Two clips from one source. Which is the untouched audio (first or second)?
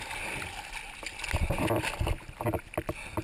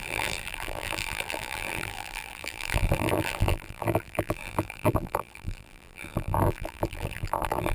first